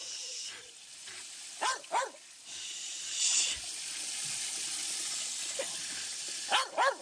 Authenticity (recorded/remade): recorded